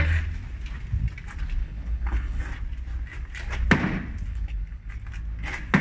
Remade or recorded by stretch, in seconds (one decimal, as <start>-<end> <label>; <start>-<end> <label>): 0.0-1.6 recorded; 1.6-2.4 remade; 2.4-4.3 recorded; 4.3-4.9 remade; 4.9-5.8 recorded